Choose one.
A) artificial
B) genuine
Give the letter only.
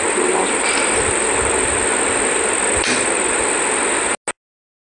B